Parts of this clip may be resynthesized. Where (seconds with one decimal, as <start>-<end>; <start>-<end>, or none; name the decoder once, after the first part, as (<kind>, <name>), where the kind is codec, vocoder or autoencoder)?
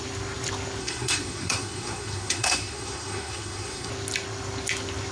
0.8-3.9 (codec, SNAC)